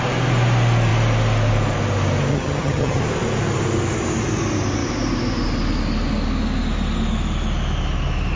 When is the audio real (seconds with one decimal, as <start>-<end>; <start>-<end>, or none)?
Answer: 0.0-2.3; 3.0-8.4